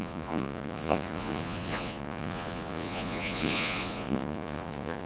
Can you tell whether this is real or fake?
fake